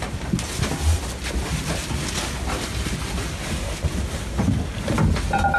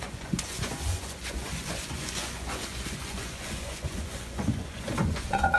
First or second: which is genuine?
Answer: first